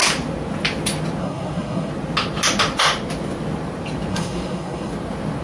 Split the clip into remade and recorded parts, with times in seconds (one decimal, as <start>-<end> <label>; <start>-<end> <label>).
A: 0.0-1.2 recorded; 1.2-1.9 remade; 1.9-4.1 recorded; 4.1-4.9 remade; 4.9-5.4 recorded